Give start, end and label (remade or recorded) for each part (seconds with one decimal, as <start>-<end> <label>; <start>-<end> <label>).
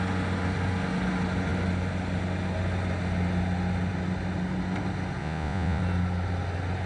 0.0-5.2 recorded; 5.2-5.8 remade; 5.8-6.9 recorded